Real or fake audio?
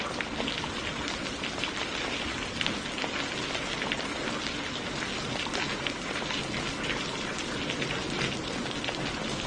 real